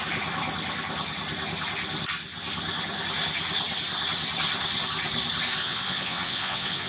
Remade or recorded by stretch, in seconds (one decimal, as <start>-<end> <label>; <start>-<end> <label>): 0.0-5.6 recorded; 5.6-6.9 remade